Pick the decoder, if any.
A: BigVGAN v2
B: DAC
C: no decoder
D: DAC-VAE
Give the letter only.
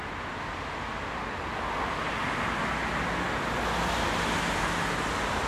C